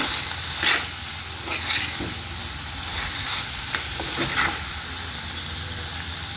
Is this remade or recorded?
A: recorded